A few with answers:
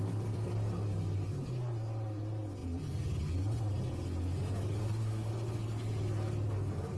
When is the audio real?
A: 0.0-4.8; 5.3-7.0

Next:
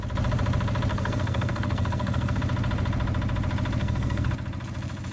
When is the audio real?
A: 0.0-0.9; 2.4-3.8; 4.3-5.1

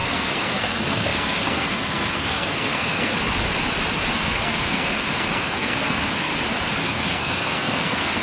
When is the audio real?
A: 3.1-4.1; 6.3-6.8

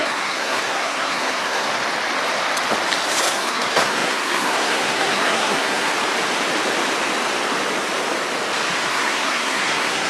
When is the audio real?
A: 1.7-3.2; 5.9-8.9

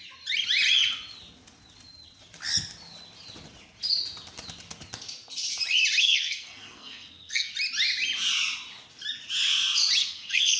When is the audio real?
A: 0.0-6.0; 7.5-10.0

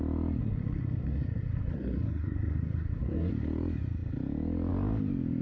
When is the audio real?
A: 0.0-0.4; 3.3-5.4

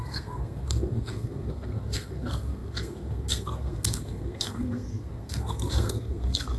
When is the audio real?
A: none